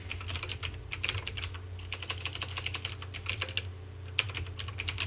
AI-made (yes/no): no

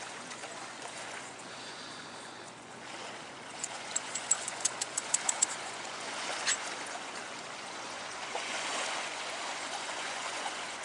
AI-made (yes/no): yes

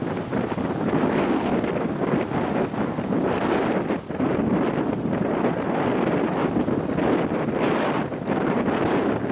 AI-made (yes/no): no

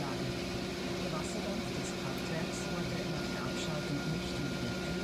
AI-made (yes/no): no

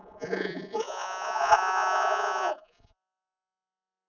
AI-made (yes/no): yes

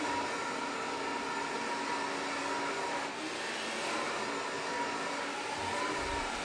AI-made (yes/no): no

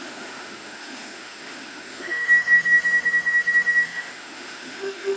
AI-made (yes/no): yes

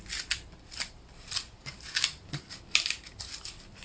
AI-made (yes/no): no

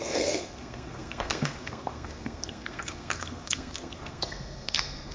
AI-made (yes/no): yes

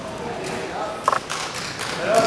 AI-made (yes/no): no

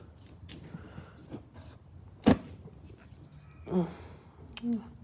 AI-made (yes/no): no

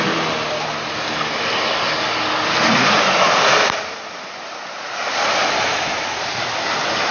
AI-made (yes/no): no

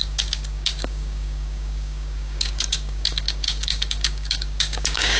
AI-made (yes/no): yes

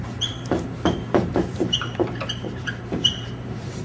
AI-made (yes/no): yes